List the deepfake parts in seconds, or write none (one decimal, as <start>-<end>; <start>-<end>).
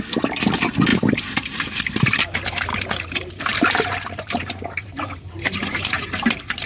0.9-1.8; 2.7-6.7